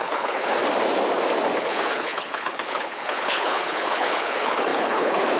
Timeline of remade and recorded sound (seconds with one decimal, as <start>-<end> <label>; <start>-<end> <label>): 0.0-0.6 remade; 0.6-1.6 recorded; 1.6-5.4 remade